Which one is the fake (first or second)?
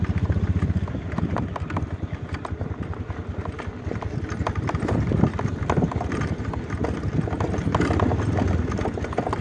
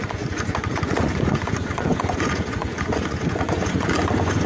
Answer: second